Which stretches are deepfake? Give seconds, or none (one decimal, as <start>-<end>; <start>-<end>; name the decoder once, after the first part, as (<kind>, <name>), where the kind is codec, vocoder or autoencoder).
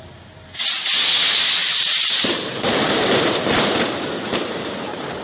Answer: 1.6-3.1 (vocoder, BigVGAN v2)